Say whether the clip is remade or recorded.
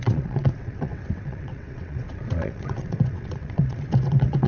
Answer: remade